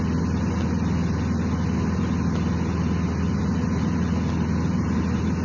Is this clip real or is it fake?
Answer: real